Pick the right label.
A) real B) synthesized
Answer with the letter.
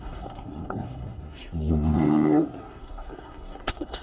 B